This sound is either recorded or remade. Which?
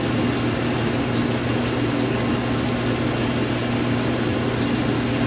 recorded